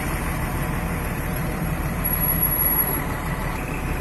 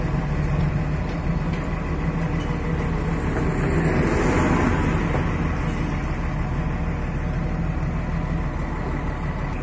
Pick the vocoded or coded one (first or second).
first